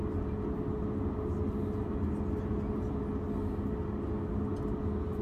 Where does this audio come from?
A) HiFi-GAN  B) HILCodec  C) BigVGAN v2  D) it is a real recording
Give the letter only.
D